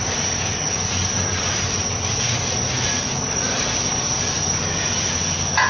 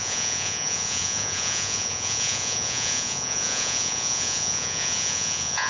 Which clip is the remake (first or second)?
second